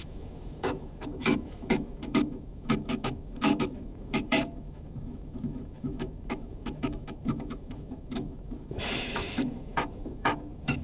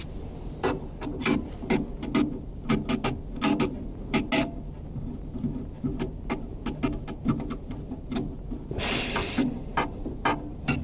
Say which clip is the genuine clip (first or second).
second